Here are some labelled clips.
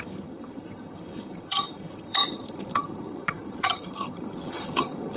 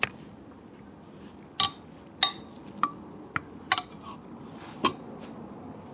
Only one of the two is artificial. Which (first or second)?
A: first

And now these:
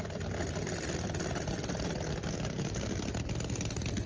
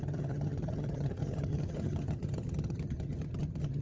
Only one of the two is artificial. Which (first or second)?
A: second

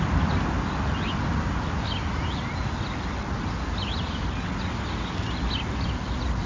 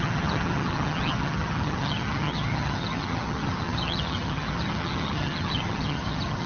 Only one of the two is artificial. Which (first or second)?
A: second